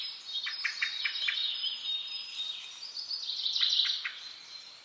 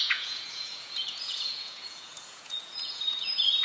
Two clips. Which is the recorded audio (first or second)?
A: first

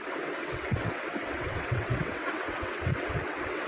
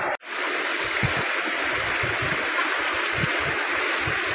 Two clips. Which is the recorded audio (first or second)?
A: second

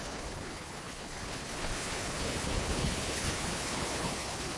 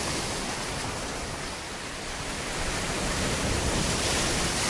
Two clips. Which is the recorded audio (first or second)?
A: second